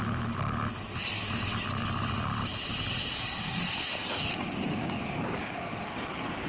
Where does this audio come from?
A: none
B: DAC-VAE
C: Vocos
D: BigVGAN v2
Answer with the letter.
A